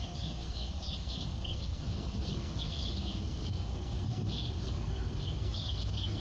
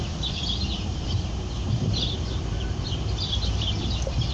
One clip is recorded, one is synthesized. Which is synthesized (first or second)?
first